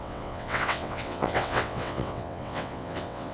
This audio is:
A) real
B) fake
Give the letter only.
B